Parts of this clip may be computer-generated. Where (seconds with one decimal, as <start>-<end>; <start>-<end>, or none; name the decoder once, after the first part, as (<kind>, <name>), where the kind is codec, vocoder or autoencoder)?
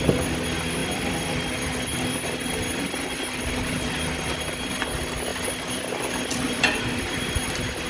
0.8-3.7 (vocoder, BigVGAN v2); 5.3-7.5